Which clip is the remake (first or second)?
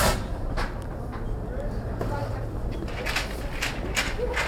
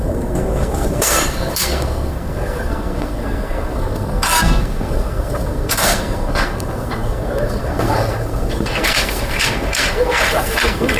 second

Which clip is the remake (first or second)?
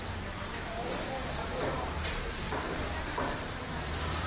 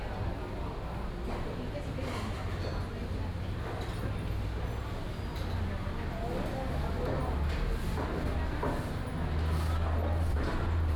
first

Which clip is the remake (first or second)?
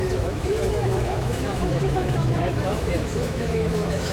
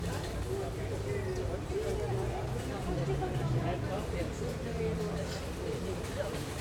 first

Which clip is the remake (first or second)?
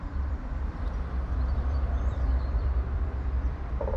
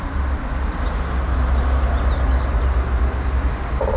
first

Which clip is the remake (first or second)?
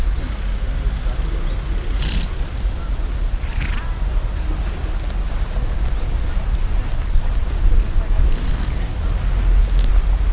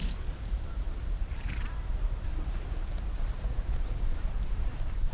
second